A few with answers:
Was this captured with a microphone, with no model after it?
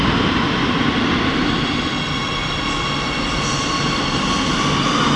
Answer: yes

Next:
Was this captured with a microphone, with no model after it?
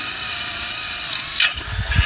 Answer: yes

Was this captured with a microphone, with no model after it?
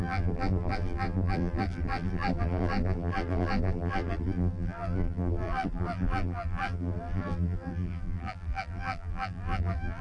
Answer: no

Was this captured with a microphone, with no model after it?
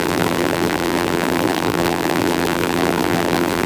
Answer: no